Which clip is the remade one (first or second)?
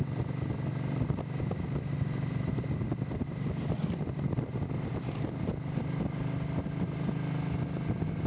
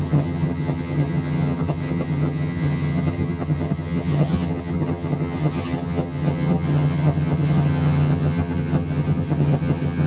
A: second